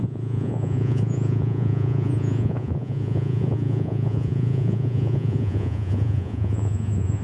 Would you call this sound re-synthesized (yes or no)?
yes